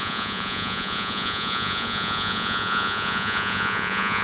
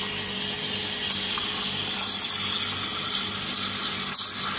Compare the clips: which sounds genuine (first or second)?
second